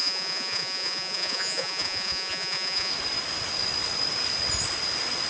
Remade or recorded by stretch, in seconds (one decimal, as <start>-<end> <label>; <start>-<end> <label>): 0.0-2.9 remade; 2.9-5.3 recorded